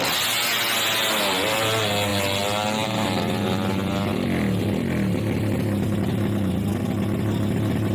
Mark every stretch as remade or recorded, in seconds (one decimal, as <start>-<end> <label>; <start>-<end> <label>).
0.0-7.9 recorded